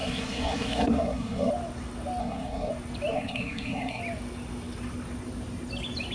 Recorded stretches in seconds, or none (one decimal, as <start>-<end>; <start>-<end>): 1.5-2.2; 2.7-3.1; 4.0-6.1